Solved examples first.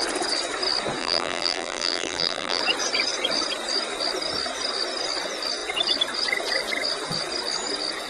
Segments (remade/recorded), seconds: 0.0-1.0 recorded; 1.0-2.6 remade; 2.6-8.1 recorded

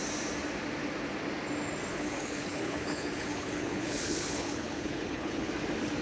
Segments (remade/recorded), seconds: 0.0-1.9 recorded; 1.9-5.5 remade; 5.5-6.0 recorded

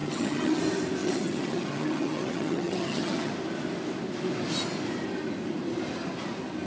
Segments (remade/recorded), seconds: 0.0-0.6 remade; 0.6-1.0 recorded; 1.0-3.3 remade; 3.3-6.7 recorded

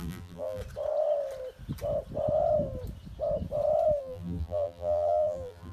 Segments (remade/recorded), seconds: 0.0-0.6 remade; 0.6-4.0 recorded; 4.0-5.7 remade

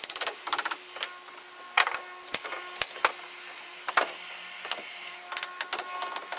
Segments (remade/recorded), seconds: 0.0-6.4 recorded

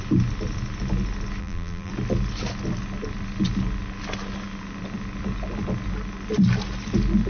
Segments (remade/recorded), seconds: 0.0-1.4 recorded; 1.4-1.9 remade; 1.9-7.3 recorded

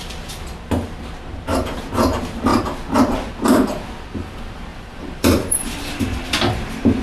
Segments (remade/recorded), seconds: 0.0-4.7 recorded; 4.7-6.0 remade; 6.0-7.0 recorded

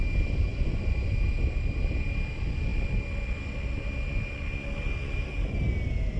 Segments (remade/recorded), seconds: 0.0-0.5 recorded; 0.5-1.1 remade; 1.1-6.2 recorded